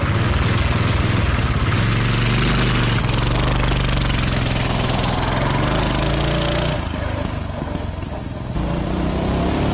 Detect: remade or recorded recorded